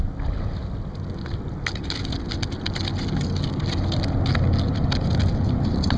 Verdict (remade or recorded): recorded